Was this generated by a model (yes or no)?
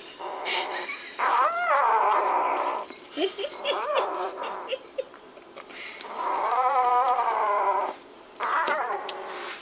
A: yes